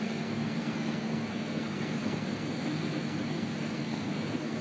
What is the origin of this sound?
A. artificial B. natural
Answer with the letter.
A